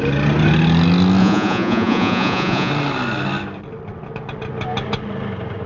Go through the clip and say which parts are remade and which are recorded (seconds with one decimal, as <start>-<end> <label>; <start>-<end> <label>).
0.0-1.2 recorded; 1.2-2.7 remade; 2.7-5.7 recorded